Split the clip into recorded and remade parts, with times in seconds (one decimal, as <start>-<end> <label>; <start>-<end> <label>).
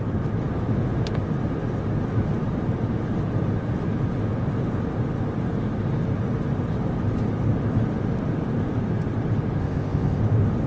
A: 0.0-9.6 recorded; 9.6-10.2 remade; 10.2-10.7 recorded